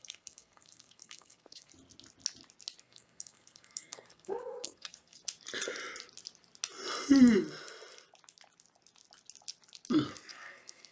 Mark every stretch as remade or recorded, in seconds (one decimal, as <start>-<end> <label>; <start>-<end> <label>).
0.0-1.7 remade; 1.7-2.8 recorded; 2.8-5.2 remade; 5.2-10.3 recorded; 10.3-10.9 remade